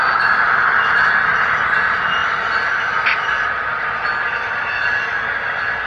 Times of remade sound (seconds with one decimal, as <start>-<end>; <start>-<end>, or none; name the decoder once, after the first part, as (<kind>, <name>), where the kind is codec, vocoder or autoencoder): none